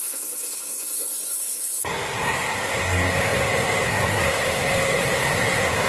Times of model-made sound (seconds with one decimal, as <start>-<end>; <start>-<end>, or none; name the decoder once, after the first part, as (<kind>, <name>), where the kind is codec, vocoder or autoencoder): 0.0-5.9 (codec, SNAC)